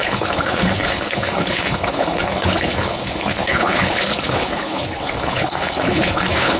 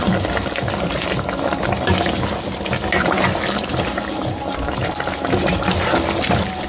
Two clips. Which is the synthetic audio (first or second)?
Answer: first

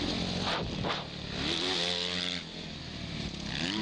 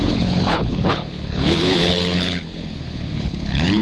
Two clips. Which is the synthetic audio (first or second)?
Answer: second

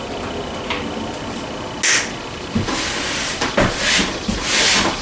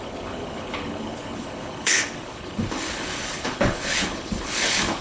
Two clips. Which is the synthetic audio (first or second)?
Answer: second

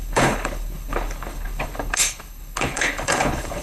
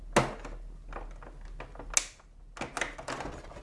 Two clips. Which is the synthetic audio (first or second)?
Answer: first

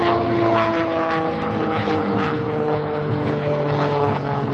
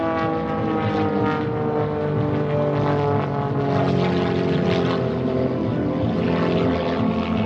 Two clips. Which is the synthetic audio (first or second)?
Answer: first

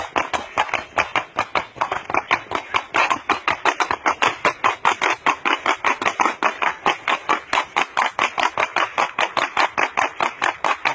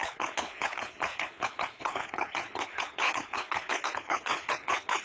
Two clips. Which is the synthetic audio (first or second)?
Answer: second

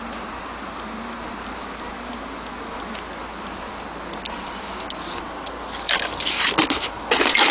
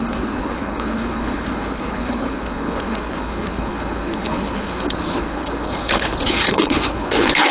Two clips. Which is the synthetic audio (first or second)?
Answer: second